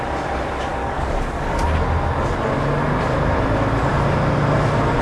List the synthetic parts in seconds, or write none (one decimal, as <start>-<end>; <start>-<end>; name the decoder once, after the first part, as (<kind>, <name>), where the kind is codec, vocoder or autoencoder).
0.7-1.6 (codec, DAC)